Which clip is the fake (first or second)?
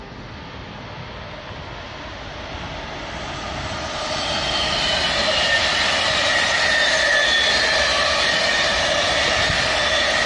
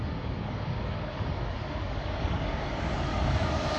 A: second